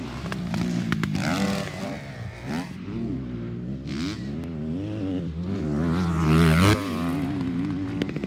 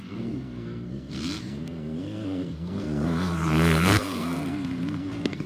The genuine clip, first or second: first